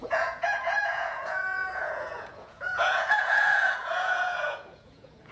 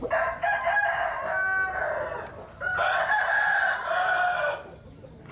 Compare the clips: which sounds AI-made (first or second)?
first